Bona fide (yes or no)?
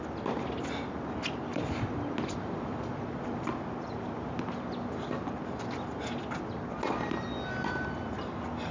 yes